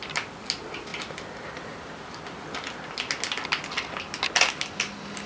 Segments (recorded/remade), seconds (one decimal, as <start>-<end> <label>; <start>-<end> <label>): 0.0-5.3 recorded